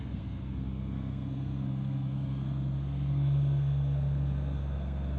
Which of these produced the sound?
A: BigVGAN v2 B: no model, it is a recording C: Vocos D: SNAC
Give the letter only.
D